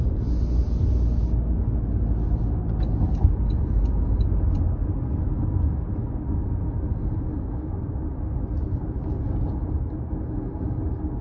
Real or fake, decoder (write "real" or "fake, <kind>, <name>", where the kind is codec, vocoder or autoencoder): real